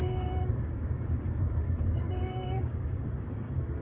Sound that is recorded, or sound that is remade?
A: remade